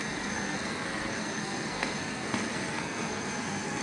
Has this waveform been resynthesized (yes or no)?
yes